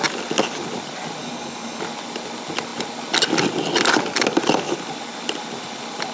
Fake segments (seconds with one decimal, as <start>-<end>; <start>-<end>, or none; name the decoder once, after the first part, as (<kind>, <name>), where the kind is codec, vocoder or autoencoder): 1.2-1.8 (codec, DAC)